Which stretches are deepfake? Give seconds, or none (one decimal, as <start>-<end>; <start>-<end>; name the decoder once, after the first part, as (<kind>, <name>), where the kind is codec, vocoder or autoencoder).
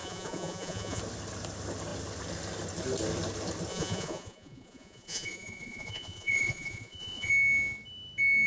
0.0-1.0 (vocoder, Vocos); 3.7-7.3